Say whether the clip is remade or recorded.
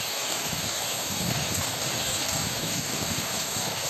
remade